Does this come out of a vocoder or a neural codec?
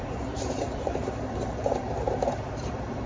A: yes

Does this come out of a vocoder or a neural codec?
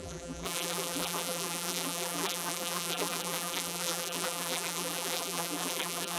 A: yes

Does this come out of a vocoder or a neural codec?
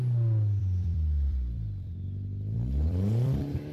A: yes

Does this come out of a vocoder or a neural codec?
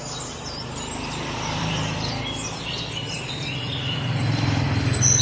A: yes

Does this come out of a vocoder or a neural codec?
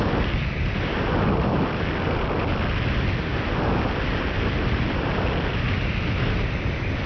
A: no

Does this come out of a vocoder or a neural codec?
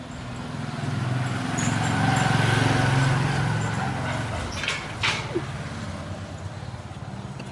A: no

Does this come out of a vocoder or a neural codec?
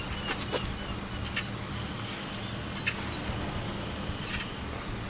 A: no